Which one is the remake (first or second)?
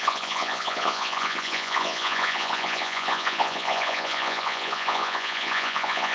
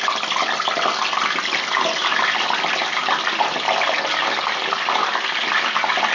first